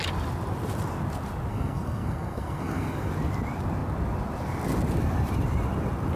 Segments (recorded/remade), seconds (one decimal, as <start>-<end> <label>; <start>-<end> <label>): 0.0-1.5 recorded; 1.5-3.1 remade; 3.1-6.2 recorded